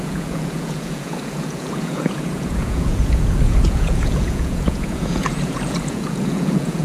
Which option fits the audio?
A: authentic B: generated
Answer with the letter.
B